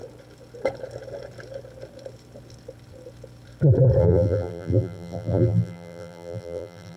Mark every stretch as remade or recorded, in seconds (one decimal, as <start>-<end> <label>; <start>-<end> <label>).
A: 0.0-4.0 recorded; 4.0-7.0 remade